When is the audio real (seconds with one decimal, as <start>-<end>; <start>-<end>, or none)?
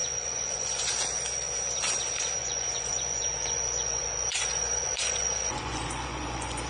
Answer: 0.9-2.4